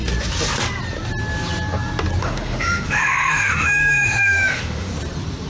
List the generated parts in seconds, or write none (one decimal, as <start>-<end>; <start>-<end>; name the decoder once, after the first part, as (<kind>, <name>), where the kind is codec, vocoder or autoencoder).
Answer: 2.2-4.9 (autoencoder, DAC-VAE)